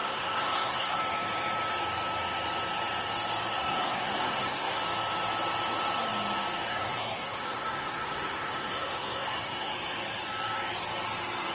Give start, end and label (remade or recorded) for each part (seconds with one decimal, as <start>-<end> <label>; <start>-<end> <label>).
0.0-1.0 remade; 1.0-3.6 recorded; 3.6-4.8 remade; 4.8-6.7 recorded; 6.7-9.7 remade; 9.7-11.5 recorded